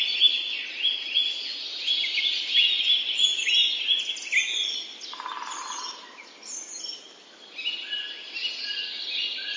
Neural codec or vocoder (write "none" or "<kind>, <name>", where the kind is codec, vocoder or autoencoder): none